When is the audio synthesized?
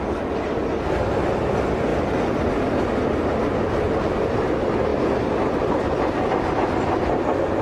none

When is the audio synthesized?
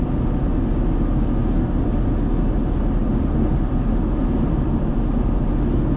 none